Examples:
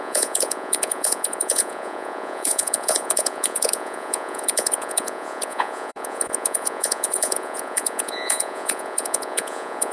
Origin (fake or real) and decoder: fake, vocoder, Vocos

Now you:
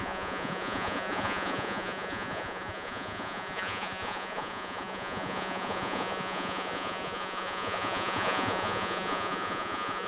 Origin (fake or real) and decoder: fake, vocoder, Vocos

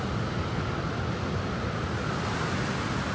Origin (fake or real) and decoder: real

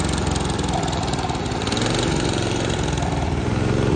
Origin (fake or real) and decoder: real